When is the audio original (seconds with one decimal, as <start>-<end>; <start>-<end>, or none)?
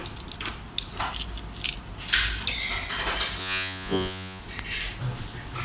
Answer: 0.0-3.4; 4.4-5.6